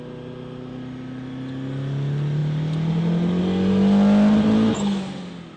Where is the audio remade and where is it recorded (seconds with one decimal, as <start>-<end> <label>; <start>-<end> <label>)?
0.0-5.6 recorded